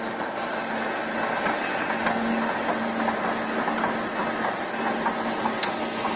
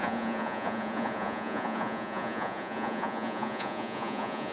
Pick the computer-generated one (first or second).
second